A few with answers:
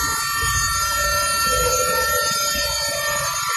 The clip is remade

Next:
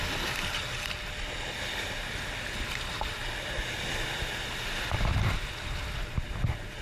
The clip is recorded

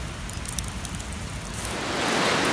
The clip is recorded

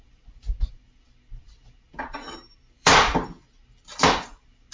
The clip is remade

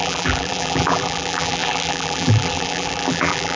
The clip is remade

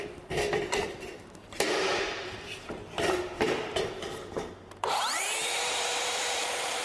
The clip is remade